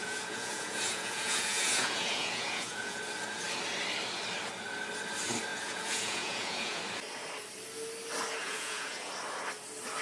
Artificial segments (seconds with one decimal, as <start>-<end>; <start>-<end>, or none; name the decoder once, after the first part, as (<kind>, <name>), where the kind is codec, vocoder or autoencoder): 0.0-3.0 (vocoder, Vocos); 5.5-6.8; 8.4-9.1